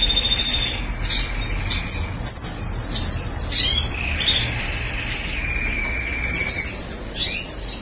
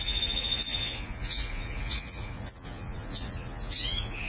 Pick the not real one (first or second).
second